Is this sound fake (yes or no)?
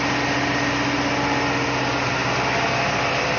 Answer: no